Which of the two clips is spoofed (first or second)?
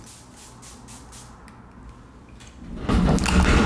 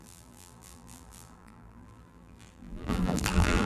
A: second